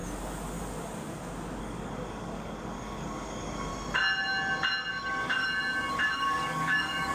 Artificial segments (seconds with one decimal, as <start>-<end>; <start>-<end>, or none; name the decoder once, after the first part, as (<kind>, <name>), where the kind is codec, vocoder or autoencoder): 1.6-3.7 (codec, DAC); 4.9-5.4; 5.9-7.1